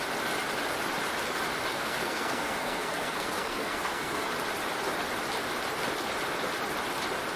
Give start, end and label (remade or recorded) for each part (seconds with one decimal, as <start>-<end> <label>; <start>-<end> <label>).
0.0-1.7 recorded; 1.7-4.3 remade; 4.3-7.4 recorded